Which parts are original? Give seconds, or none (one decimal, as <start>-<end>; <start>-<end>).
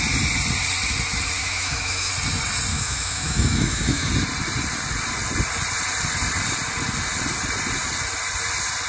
0.0-1.4; 2.1-2.7; 4.1-8.9